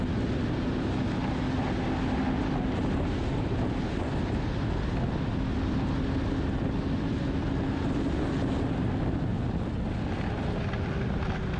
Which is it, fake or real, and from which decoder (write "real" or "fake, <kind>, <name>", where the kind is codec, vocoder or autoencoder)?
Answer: real